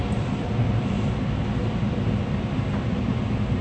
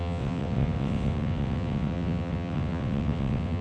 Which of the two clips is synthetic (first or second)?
second